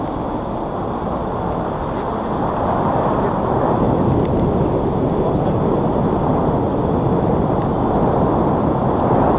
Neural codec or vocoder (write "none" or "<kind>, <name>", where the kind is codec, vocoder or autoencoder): none